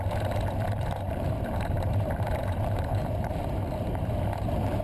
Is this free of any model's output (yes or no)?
no